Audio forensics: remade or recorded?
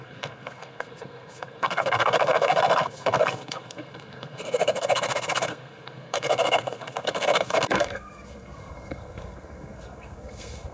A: remade